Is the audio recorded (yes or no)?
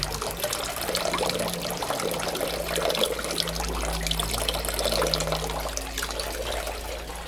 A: yes